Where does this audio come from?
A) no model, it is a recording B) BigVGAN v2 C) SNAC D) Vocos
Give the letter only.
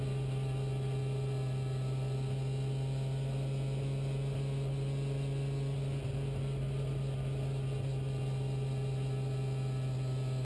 A